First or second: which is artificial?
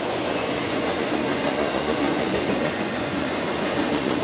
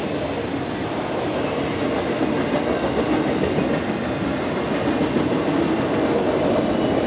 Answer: first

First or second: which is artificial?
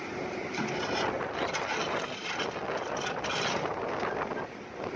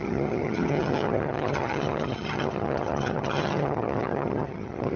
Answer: second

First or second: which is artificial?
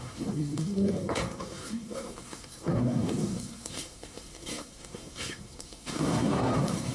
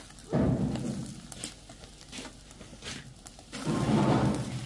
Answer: first